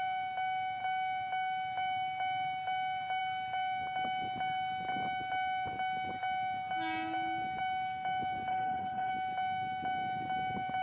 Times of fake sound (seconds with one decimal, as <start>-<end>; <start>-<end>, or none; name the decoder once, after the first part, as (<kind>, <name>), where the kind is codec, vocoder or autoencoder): 8.5-9.1 (codec, HILCodec)